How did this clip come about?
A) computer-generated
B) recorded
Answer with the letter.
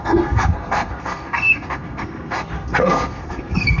A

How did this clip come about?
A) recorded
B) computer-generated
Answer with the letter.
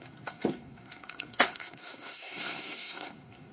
B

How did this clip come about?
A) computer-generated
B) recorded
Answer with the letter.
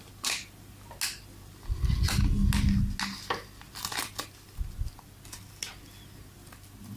B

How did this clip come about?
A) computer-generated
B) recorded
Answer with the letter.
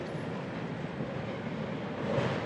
B